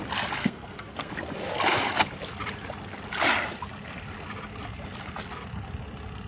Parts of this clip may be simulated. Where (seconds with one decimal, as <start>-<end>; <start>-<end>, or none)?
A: 0.4-1.1